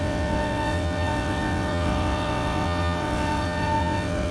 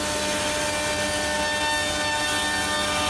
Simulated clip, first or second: first